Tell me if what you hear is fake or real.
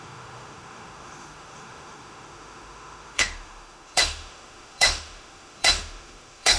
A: fake